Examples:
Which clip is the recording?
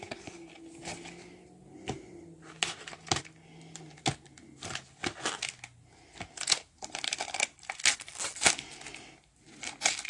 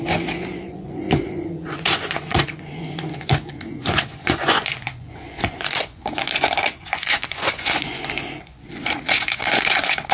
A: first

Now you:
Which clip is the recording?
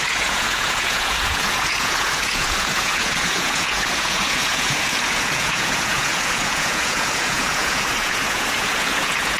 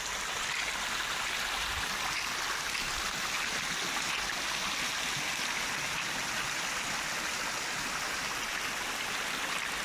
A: second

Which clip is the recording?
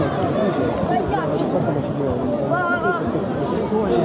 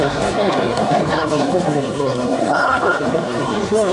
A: first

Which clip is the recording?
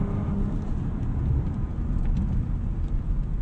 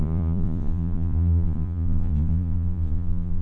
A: first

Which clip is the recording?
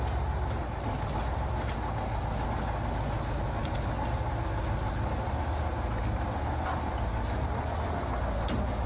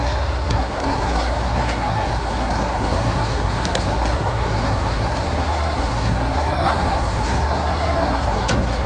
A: first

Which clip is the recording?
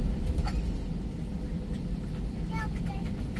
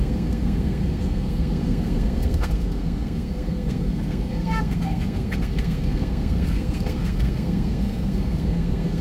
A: first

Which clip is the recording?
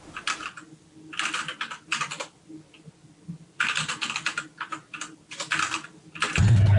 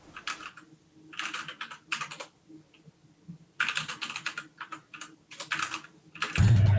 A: second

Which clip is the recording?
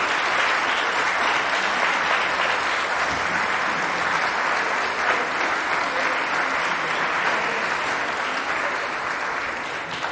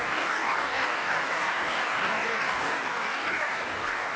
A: first